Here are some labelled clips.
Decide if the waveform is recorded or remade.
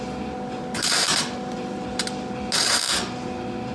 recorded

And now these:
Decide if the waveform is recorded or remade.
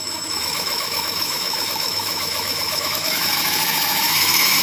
remade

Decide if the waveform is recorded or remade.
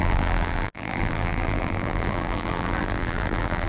remade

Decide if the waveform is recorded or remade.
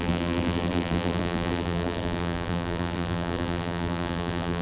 remade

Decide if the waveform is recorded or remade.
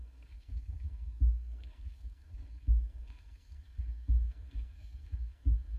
remade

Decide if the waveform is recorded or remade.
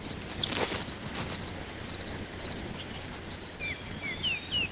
recorded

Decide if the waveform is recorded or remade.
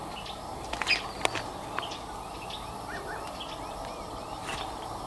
recorded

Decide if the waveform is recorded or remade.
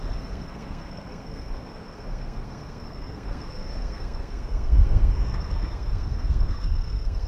remade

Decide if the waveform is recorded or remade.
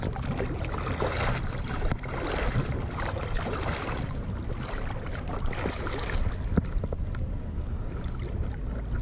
recorded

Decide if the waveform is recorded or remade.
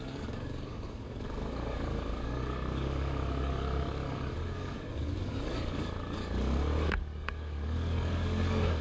remade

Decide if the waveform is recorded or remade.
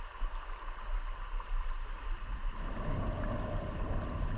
recorded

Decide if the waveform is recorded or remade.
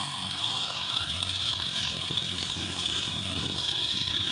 remade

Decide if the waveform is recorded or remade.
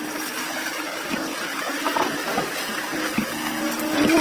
recorded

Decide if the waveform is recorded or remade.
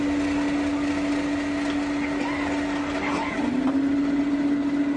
recorded